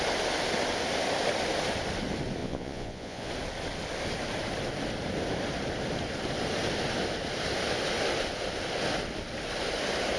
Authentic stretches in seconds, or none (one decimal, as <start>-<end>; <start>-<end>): 0.0-2.4; 3.3-10.2